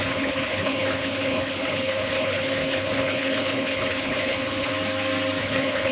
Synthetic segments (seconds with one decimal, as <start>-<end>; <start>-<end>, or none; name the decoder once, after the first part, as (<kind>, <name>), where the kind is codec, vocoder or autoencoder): 0.0-4.7 (codec, HILCodec); 5.4-5.9